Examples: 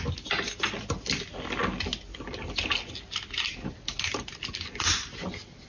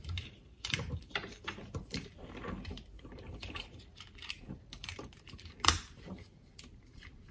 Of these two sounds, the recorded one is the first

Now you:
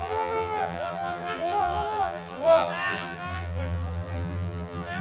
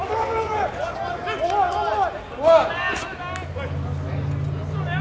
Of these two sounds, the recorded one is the second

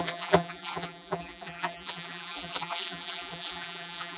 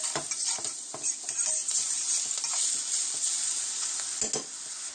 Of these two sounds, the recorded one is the second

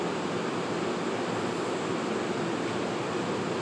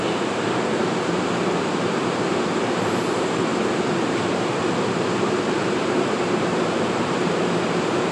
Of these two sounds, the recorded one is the first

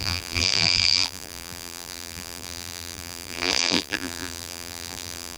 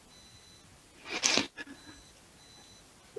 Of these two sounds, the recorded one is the second